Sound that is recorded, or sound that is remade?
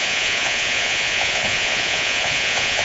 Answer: remade